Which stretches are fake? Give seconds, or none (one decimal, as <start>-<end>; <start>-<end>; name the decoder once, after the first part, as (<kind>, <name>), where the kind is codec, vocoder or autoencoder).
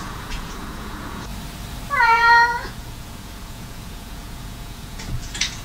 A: 0.0-1.3 (vocoder, Vocos); 2.0-5.6